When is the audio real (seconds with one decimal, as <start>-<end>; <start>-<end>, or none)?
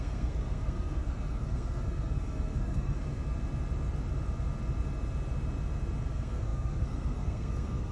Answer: 3.2-6.1